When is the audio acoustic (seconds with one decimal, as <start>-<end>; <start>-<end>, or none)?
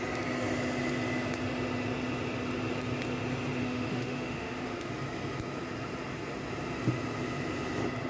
0.0-3.6; 4.9-8.1